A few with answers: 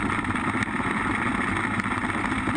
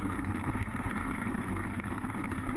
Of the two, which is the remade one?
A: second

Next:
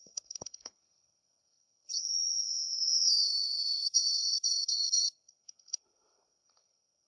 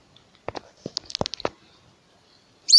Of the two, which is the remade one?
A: first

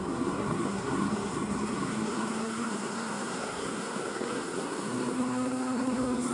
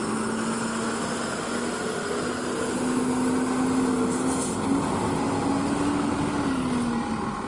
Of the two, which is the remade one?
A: first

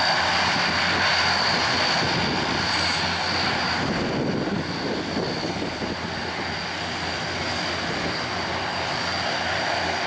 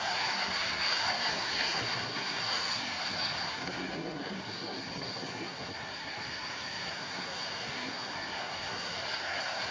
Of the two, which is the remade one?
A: second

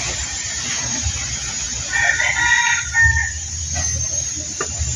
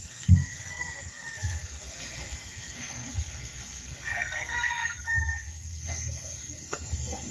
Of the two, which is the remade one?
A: second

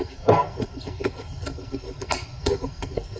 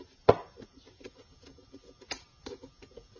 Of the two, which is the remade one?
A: first